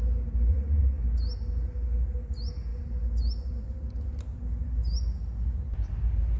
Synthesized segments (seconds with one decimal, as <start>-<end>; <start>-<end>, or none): 0.5-1.0